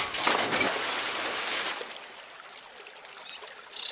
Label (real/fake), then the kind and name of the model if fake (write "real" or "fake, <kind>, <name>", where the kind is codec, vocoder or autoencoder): real